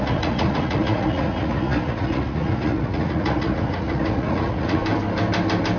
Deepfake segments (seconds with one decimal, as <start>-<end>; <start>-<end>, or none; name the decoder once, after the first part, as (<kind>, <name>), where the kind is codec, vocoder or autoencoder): 0.0-4.8 (vocoder, Vocos)